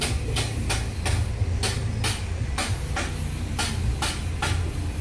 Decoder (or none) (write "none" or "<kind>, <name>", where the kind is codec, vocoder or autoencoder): none